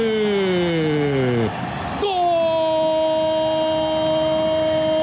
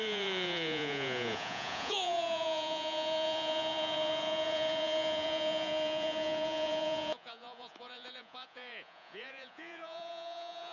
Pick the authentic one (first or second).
first